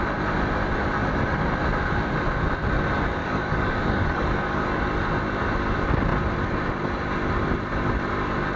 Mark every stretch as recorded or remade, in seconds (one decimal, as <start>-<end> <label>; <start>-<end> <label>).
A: 0.0-3.2 recorded; 3.2-4.8 remade; 4.8-8.6 recorded